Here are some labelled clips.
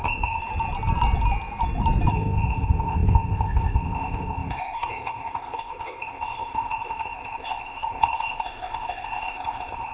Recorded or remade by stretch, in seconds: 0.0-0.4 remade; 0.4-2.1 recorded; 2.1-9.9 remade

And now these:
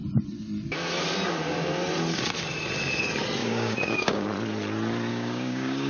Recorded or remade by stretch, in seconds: 0.0-3.4 recorded; 3.4-4.3 remade; 4.3-5.1 recorded; 5.1-5.9 remade

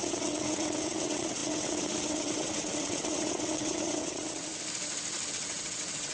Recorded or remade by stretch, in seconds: 0.0-4.5 remade; 4.5-5.3 recorded; 5.3-6.1 remade

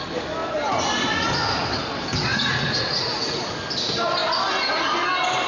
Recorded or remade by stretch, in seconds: 0.0-2.3 recorded; 2.3-3.5 remade; 3.5-5.5 recorded

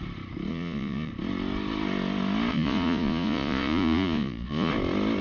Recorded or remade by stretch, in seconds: 0.0-0.5 recorded; 0.5-1.1 remade; 1.1-2.5 recorded; 2.5-4.7 remade; 4.7-5.2 recorded

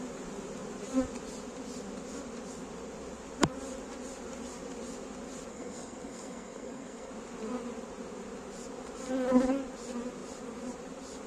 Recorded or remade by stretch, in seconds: 0.0-5.5 recorded; 5.5-7.1 remade; 7.1-11.3 recorded

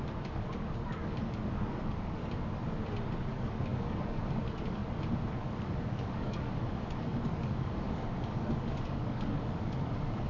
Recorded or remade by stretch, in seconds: 0.0-2.2 remade; 2.2-3.3 recorded; 3.3-4.8 remade; 4.8-5.4 recorded; 5.4-10.3 remade